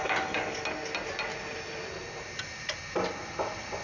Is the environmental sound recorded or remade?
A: recorded